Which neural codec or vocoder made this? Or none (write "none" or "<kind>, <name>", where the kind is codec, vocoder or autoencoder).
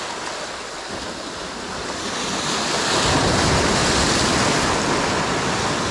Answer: none